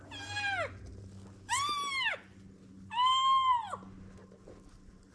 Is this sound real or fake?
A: real